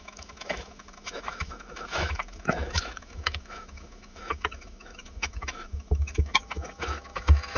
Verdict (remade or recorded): remade